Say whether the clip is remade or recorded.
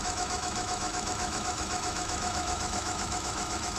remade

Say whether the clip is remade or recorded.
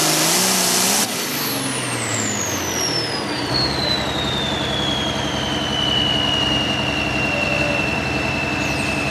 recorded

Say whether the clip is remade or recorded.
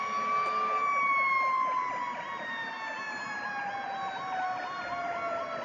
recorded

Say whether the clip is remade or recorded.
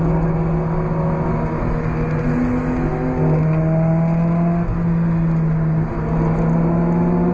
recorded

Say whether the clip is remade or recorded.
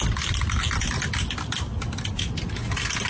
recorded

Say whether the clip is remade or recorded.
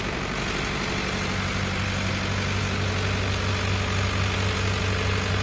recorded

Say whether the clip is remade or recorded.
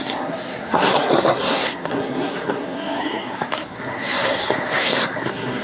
remade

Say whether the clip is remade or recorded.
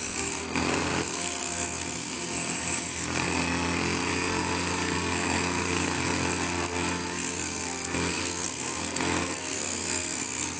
remade